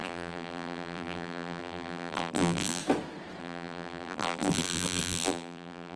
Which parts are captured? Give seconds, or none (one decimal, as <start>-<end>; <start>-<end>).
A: 2.8-3.4